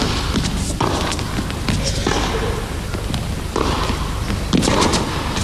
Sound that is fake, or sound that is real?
fake